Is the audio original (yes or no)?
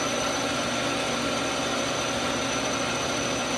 yes